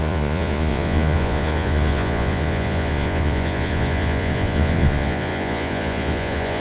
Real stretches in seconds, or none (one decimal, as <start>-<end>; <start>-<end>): none

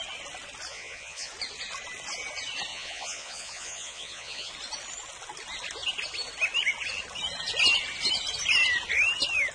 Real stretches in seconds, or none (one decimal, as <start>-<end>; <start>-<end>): 0.0-0.7; 1.3-2.7; 4.5-9.5

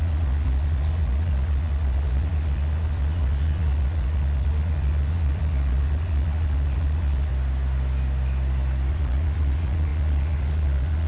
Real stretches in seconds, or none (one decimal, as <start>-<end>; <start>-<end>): 7.3-8.9

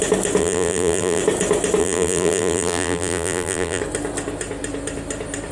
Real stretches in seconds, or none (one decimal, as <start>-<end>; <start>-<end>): 0.0-0.4; 1.2-1.8; 3.8-5.5

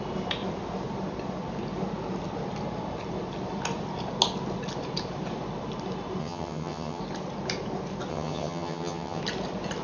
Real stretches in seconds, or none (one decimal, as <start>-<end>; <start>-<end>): 0.0-6.2; 7.0-8.1; 9.2-9.8

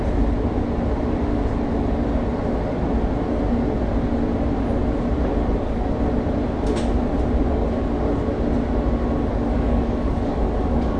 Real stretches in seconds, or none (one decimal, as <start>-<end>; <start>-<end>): 0.0-9.3

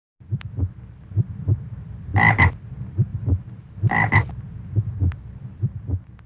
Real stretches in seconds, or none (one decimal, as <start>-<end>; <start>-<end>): 0.0-3.1; 3.6-6.3